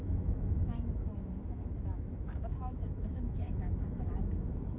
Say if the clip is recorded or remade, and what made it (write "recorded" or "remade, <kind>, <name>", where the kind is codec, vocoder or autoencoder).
remade, autoencoder, DAC-VAE